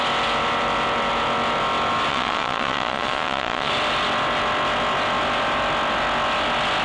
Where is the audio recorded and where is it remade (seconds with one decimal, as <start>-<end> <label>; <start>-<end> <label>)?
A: 0.0-2.1 recorded; 2.1-3.7 remade; 3.7-6.8 recorded